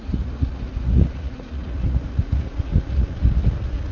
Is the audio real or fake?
fake